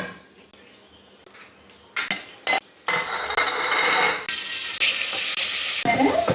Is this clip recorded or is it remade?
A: recorded